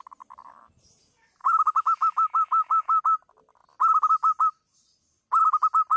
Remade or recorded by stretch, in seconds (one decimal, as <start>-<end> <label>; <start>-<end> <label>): 0.0-1.4 recorded; 1.4-3.0 remade; 3.0-6.0 recorded